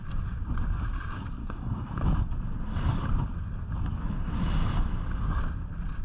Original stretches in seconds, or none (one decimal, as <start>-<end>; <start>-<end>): 0.0-1.4; 1.9-6.0